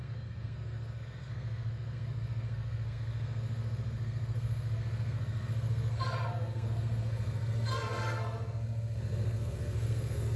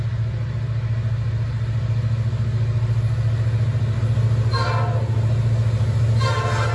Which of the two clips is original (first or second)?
second